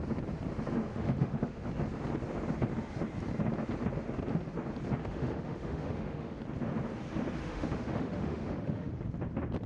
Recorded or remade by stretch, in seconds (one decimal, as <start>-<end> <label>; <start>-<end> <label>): 0.0-0.9 recorded; 0.9-1.7 remade; 1.7-5.0 recorded; 5.0-6.4 remade; 6.4-7.4 recorded; 7.4-8.9 remade; 8.9-9.7 recorded